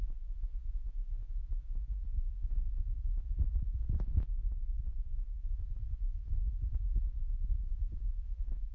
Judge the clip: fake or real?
fake